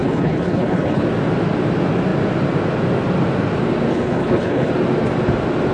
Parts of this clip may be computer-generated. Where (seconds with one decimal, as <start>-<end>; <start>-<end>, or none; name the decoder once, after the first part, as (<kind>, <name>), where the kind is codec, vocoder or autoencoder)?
0.0-1.0 (codec, HILCodec); 3.9-4.7